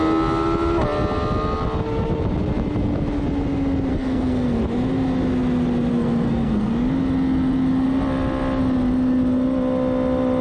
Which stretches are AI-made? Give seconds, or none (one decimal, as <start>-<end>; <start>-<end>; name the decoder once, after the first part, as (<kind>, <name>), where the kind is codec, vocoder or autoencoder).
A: 3.9-4.6 (codec, SNAC); 5.9-6.7